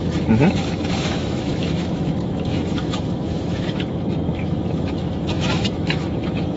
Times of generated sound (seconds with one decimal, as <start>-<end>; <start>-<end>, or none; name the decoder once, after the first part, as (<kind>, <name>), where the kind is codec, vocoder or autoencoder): 0.0-6.6 (autoencoder, DAC-VAE)